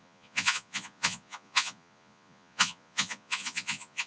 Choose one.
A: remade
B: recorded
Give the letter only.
A